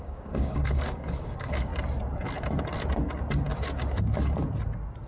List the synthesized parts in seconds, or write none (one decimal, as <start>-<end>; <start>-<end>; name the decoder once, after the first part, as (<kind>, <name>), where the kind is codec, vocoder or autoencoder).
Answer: 0.0-1.7 (codec, DAC)